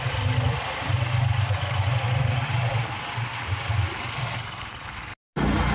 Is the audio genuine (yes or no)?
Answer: yes